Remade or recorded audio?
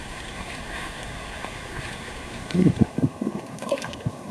remade